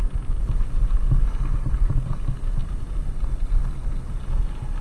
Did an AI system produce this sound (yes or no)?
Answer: no